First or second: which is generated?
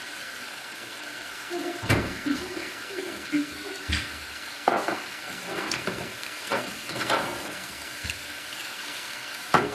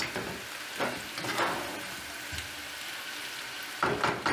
first